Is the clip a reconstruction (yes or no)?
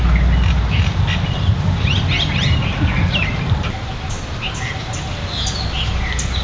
no